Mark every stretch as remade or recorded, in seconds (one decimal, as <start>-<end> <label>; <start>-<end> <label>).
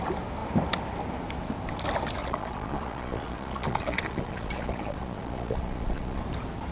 0.0-2.2 recorded; 2.2-6.2 remade; 6.2-6.7 recorded